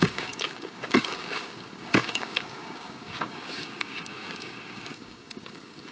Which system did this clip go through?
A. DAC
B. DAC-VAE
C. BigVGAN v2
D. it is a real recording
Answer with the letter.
A